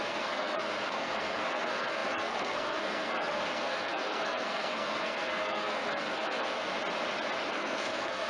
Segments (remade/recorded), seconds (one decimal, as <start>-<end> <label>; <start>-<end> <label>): 0.0-6.7 remade; 6.7-7.5 recorded; 7.5-8.3 remade